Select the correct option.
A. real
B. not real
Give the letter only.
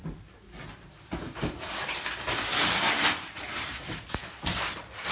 A